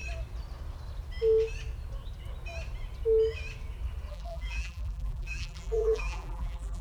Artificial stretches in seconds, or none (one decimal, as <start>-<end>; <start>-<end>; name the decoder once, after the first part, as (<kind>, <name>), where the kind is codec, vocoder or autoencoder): 4.1-6.8 (vocoder, BigVGAN v2)